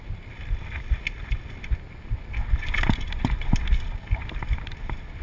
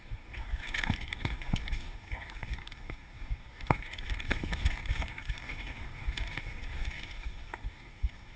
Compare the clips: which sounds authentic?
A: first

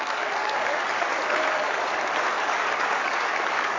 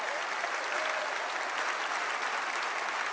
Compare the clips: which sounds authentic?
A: second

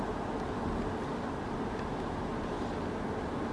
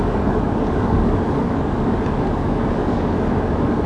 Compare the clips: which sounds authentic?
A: first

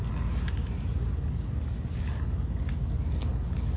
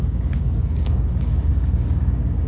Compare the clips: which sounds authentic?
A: first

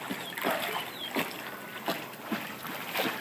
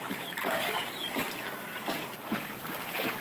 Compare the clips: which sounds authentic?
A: first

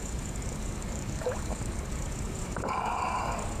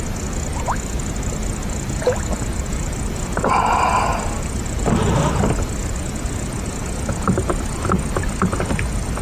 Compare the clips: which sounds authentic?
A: second